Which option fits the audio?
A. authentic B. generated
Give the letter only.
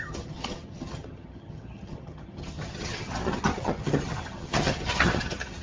B